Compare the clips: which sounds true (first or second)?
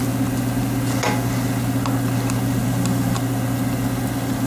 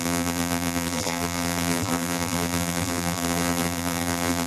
first